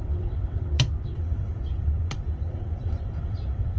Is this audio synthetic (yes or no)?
yes